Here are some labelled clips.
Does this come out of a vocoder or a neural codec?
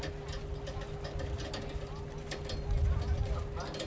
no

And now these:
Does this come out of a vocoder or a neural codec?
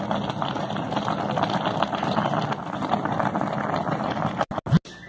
no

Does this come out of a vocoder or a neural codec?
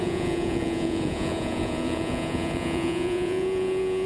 yes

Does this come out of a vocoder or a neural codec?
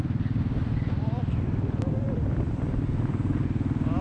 yes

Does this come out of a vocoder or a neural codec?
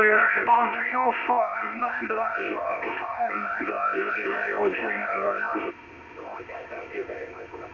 yes